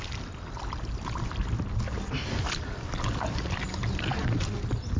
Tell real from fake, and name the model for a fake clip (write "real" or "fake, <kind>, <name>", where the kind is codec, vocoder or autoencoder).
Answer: real